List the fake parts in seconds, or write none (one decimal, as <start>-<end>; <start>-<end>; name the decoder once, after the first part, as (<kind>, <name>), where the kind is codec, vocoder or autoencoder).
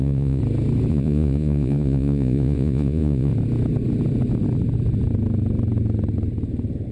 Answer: 0.0-0.4 (vocoder, Vocos); 0.9-3.3